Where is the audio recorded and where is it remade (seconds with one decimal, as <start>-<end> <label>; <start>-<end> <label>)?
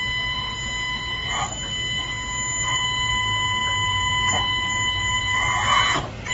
0.0-6.3 recorded